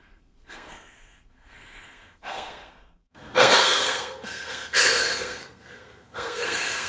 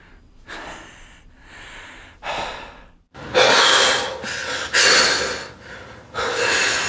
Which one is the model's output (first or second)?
first